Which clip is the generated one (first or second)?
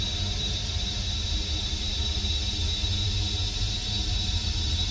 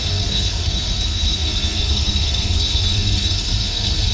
second